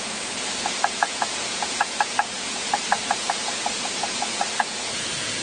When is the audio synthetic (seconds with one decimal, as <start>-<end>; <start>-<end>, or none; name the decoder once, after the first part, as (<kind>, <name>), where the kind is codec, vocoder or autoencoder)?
0.0-5.4 (vocoder, Vocos)